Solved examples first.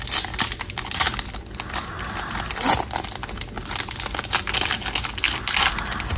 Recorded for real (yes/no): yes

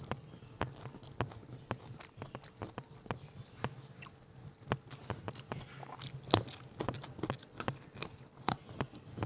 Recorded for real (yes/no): yes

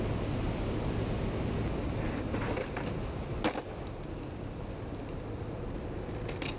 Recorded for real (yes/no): yes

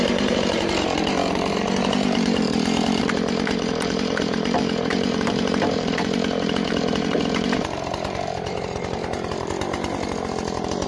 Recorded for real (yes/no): no